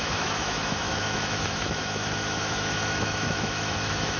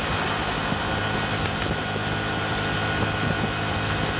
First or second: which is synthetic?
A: first